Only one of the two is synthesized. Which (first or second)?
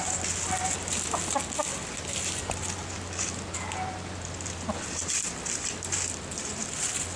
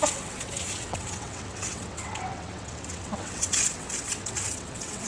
second